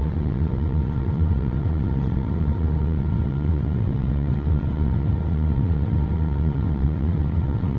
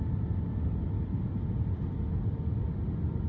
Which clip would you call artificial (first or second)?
first